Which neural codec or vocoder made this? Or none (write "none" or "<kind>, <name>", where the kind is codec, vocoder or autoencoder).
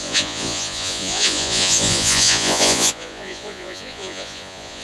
vocoder, Vocos